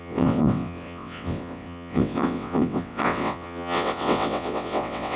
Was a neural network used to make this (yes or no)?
yes